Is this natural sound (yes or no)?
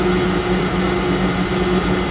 yes